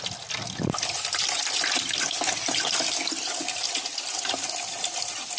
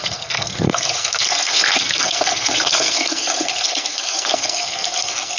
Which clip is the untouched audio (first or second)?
first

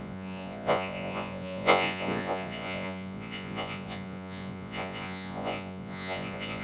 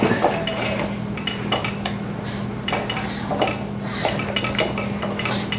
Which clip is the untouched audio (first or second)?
second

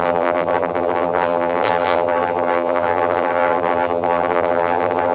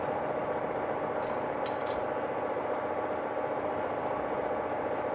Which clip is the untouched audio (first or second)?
second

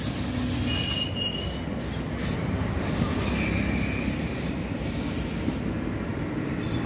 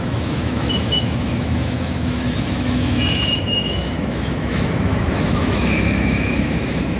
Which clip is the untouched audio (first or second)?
first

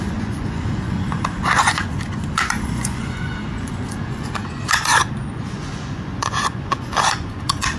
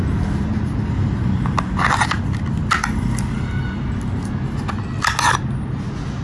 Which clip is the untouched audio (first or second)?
second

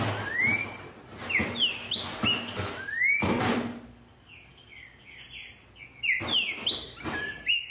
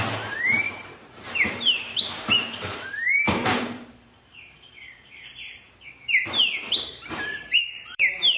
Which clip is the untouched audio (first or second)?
first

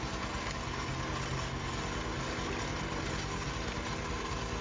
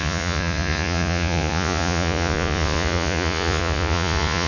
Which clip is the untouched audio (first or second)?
first